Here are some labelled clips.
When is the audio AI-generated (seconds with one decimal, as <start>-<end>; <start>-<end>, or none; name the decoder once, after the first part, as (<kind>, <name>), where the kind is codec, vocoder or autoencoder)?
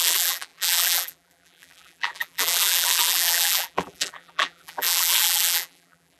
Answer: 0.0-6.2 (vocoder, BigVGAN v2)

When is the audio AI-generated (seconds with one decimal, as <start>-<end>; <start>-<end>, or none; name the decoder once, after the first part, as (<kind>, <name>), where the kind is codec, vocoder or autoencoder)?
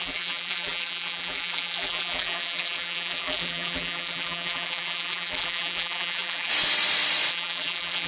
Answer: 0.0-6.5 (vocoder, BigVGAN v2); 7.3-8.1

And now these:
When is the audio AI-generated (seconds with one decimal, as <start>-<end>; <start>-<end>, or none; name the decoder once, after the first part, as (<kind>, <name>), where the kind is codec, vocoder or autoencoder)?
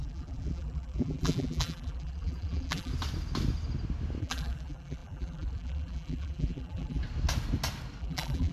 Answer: 0.0-2.9 (vocoder, BigVGAN v2); 4.2-7.0; 8.0-8.5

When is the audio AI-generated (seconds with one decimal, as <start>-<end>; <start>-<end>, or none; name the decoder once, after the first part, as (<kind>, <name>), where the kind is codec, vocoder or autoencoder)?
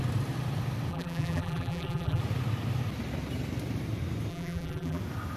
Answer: 0.9-2.2 (vocoder, BigVGAN v2); 4.3-5.0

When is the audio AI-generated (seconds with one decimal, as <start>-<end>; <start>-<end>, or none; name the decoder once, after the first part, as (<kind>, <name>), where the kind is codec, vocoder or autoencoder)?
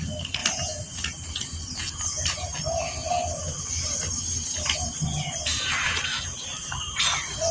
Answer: 0.4-1.8 (vocoder, BigVGAN v2)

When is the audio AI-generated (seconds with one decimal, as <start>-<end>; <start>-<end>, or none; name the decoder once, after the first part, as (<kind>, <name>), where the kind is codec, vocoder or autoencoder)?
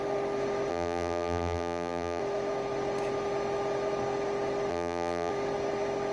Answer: 0.7-2.2 (vocoder, BigVGAN v2); 4.7-5.3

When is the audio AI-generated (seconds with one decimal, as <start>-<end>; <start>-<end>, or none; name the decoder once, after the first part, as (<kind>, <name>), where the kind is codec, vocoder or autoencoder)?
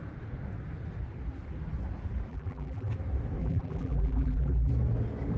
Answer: 2.3-2.9 (vocoder, BigVGAN v2); 3.4-4.7